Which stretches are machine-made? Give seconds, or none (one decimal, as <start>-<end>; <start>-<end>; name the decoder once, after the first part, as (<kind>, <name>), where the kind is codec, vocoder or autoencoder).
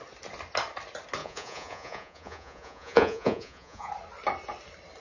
1.2-3.9 (vocoder, Vocos)